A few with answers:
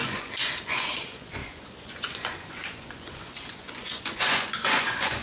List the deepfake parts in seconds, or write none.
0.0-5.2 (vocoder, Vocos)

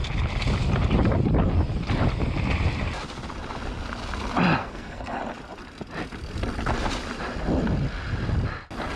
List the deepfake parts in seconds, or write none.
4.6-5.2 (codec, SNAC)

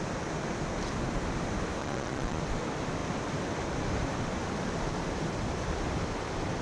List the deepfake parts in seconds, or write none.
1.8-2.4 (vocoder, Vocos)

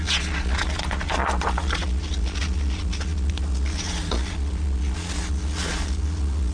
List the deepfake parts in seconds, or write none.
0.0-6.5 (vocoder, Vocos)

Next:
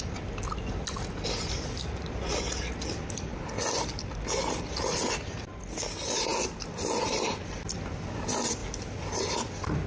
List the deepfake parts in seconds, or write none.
none

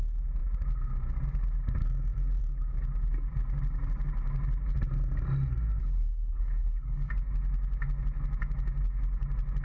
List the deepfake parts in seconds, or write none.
5.8-7.1 (codec, HILCodec)

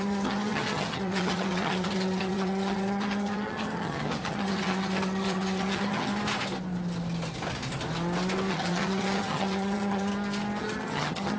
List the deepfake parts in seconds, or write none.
0.0-6.1 (vocoder, HiFi-GAN); 8.5-10.1; 10.6-11.4